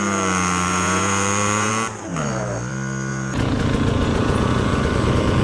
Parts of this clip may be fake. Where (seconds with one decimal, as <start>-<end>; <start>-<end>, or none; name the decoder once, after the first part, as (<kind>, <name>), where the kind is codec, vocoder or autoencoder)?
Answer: 0.7-1.7 (vocoder, Vocos); 3.1-4.8